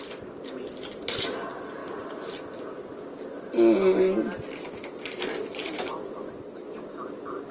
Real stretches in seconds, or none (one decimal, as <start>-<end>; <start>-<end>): 0.0-7.5